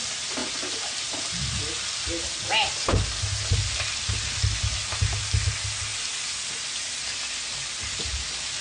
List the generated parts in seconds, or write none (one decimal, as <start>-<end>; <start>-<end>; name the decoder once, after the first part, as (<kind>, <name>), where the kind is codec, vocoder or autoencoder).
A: none